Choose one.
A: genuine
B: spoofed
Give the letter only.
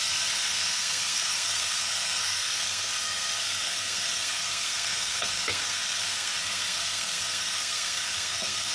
B